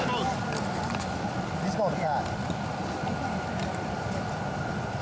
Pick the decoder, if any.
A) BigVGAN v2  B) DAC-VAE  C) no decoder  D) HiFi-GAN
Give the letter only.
A